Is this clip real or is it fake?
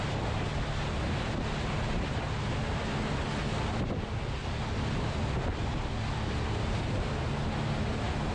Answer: real